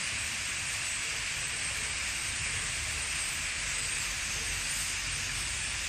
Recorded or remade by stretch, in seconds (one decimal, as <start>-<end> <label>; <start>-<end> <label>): 0.0-5.9 recorded